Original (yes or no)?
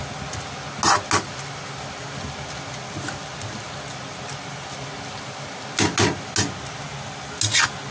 yes